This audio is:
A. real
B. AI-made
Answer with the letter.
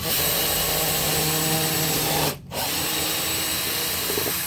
A